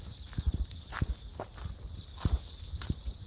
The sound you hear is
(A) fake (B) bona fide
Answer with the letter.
A